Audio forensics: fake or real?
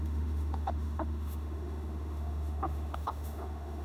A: fake